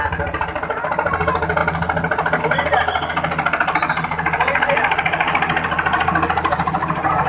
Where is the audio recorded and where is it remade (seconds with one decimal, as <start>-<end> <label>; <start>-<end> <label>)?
0.0-7.3 recorded